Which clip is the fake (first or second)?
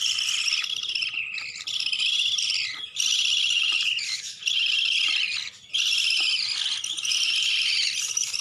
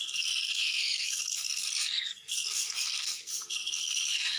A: second